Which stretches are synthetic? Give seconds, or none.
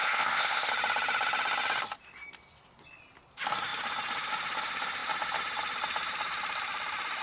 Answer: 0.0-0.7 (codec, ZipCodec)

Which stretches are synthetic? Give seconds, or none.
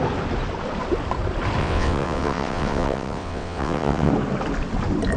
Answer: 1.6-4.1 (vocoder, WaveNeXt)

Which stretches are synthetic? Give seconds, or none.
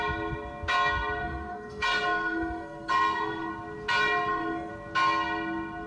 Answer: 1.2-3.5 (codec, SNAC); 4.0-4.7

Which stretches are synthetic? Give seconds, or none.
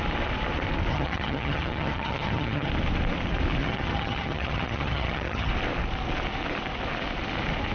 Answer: 0.9-2.7 (vocoder, HiFi-GAN); 3.6-5.5